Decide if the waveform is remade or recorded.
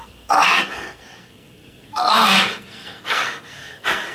remade